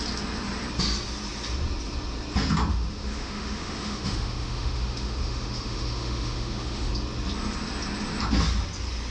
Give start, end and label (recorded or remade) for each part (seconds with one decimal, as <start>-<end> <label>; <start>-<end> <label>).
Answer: 0.0-2.7 recorded; 2.7-6.9 remade; 6.9-9.1 recorded